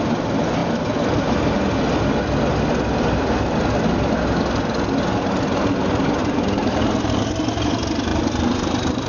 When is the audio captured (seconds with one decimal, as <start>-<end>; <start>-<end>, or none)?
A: 0.0-6.2; 7.2-8.1